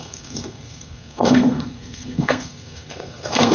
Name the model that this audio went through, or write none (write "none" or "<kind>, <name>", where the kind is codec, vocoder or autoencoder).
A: codec, SNAC